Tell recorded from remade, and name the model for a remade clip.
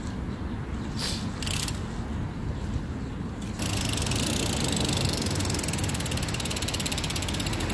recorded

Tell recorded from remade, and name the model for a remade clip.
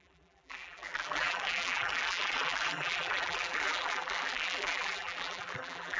remade, vocoder, BigVGAN v2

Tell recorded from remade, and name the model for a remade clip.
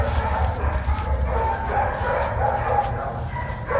recorded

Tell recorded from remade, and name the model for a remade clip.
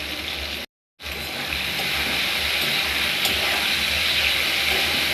recorded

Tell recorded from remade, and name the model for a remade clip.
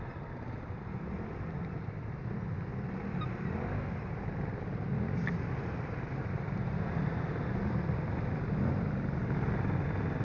recorded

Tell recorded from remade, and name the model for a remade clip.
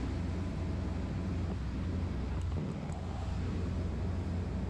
recorded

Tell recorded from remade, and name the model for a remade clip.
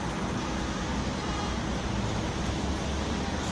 recorded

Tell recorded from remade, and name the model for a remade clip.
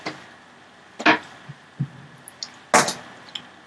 recorded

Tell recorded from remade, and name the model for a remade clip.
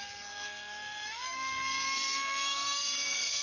remade, codec, SNAC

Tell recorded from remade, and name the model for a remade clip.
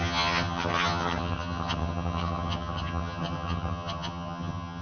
remade, vocoder, HiFi-GAN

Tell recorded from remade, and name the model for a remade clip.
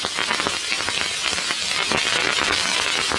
recorded